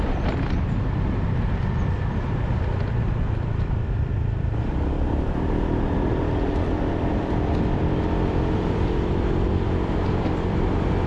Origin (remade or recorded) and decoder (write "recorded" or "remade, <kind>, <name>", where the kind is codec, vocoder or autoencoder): remade, vocoder, BigVGAN v2